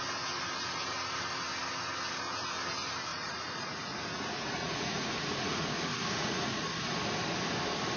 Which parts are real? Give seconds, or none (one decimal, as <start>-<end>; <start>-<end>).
0.0-3.1; 6.6-8.0